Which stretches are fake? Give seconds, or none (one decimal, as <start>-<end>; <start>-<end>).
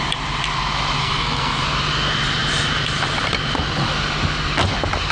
1.0-1.6